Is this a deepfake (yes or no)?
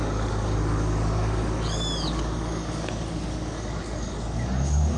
yes